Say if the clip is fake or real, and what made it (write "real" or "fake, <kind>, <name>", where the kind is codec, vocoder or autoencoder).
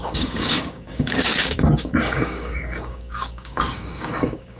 fake, codec, DAC